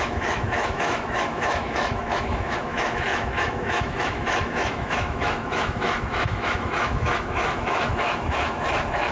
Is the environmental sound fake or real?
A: fake